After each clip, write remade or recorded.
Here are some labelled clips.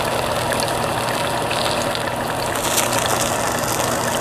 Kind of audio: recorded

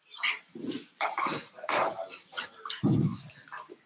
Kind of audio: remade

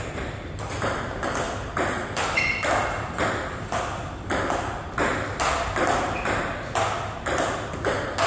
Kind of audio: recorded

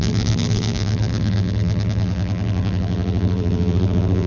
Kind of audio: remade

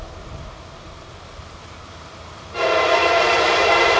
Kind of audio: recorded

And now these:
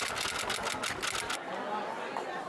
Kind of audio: recorded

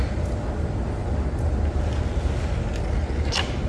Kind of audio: recorded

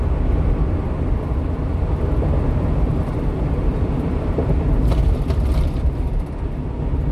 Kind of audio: remade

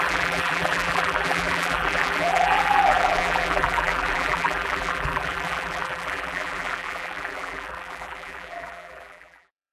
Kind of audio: remade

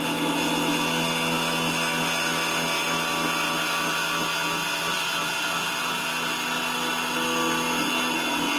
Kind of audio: recorded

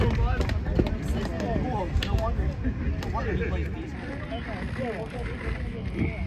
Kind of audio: recorded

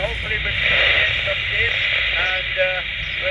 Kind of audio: recorded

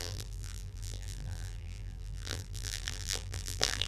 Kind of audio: remade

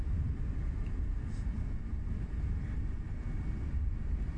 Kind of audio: recorded